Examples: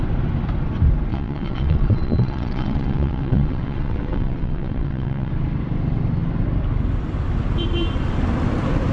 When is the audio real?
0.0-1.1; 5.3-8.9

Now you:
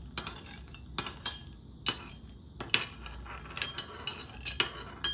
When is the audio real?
0.0-5.1

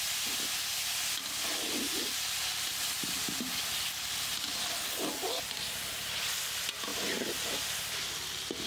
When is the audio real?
0.0-8.7